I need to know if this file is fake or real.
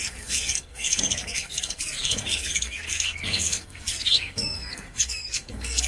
fake